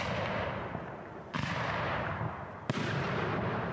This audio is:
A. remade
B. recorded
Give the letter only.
B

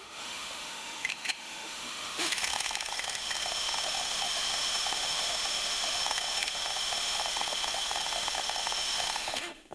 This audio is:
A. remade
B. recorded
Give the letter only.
A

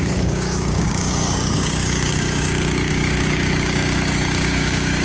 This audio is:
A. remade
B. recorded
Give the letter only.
A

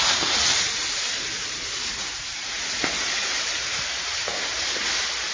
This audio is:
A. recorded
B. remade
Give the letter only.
B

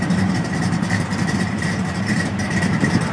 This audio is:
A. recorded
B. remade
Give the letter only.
B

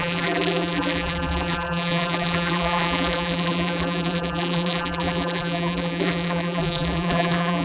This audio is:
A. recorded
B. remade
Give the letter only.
B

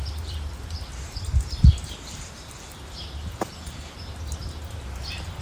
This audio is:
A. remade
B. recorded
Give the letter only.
A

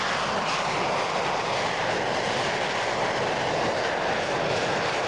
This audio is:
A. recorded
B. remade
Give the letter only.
A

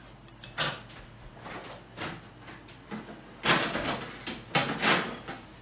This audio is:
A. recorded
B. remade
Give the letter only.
A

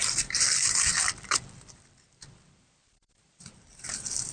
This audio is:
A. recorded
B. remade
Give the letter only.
B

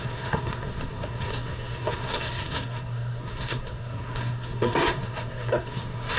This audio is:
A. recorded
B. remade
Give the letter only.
B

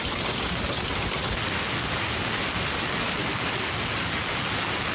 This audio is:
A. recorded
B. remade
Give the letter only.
A